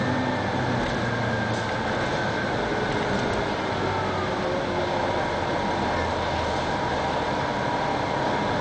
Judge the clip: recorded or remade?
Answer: recorded